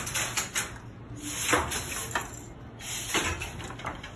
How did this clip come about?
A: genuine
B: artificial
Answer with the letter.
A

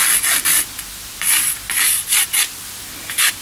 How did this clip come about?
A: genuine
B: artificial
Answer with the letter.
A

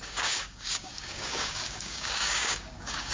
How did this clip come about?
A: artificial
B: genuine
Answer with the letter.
A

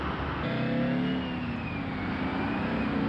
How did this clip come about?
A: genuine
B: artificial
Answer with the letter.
A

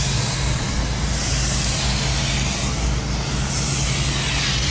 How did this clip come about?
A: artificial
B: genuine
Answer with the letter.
B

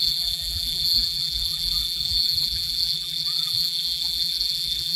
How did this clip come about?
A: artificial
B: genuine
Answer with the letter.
A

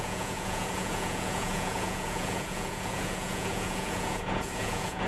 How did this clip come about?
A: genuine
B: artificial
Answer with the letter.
B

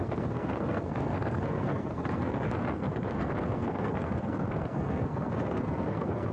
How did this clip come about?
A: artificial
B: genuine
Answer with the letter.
A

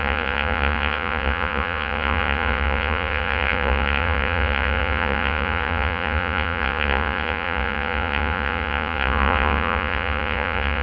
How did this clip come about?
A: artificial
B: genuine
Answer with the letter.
A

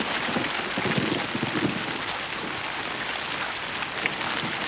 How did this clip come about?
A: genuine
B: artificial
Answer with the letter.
A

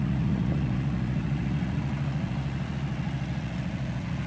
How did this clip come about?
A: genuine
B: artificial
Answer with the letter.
B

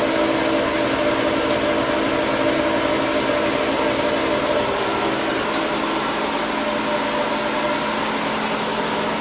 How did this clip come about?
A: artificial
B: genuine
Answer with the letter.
B